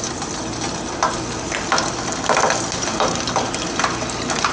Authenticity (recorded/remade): recorded